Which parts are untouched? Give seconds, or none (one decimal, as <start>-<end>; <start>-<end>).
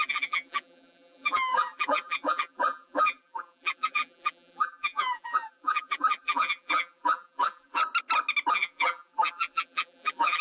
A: 7.8-8.5